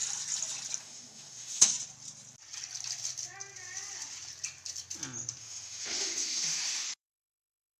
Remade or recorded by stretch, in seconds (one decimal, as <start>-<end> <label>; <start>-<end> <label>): 0.0-0.8 recorded; 0.8-1.7 remade; 1.7-5.4 recorded; 5.4-7.8 remade